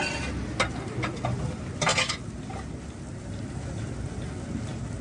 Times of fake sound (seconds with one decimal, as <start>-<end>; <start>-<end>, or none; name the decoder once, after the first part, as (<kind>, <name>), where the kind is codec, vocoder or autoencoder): none